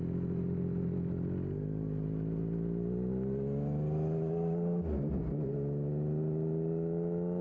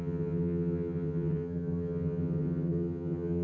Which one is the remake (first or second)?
second